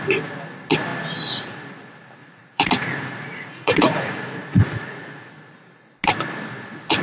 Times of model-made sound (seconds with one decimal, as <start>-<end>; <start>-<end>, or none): 2.2-5.3